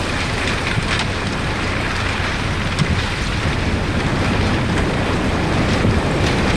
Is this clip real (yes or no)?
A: no